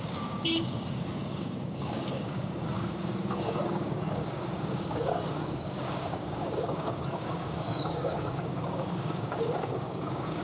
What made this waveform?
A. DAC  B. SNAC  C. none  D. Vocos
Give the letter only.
A